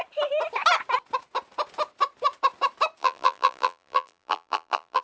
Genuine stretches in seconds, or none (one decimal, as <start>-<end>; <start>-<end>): 0.0-3.0